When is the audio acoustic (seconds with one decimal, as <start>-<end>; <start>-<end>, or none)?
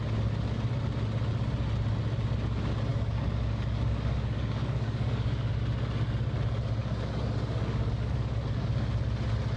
0.0-2.9; 5.5-6.8; 8.7-9.6